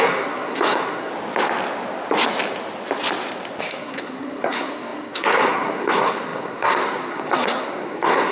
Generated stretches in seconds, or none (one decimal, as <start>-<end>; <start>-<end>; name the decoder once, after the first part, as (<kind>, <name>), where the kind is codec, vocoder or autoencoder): 0.0-1.1 (codec, SNAC); 3.6-8.3